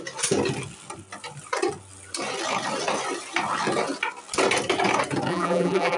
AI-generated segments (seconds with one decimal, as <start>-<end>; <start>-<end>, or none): 5.3-6.0